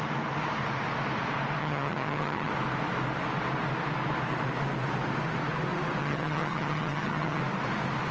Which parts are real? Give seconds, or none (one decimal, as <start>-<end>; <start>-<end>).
0.0-1.6; 2.5-6.0; 7.4-8.1